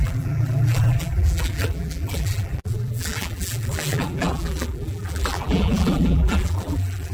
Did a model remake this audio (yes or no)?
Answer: yes